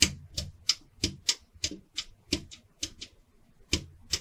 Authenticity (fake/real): real